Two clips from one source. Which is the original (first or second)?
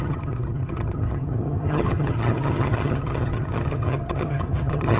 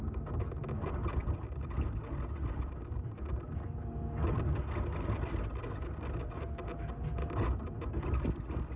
second